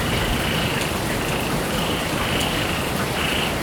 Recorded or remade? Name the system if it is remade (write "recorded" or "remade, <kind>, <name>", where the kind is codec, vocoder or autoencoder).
remade, vocoder, BigVGAN v2